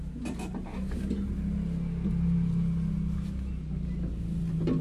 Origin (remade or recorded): recorded